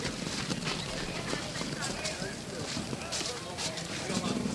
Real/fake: fake